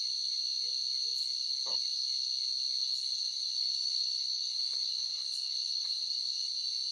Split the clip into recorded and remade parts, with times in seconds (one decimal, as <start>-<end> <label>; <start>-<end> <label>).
0.0-1.2 recorded; 1.2-1.8 remade; 1.8-2.8 recorded; 2.8-6.5 remade; 6.5-6.9 recorded